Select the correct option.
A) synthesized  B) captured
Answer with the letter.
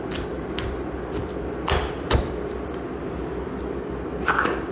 B